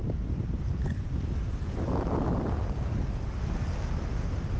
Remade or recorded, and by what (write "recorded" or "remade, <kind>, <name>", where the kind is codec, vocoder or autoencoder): recorded